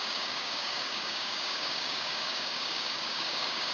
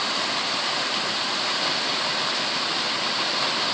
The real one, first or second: second